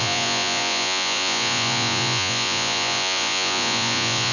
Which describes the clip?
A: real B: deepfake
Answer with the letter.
B